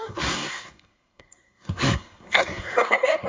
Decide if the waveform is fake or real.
fake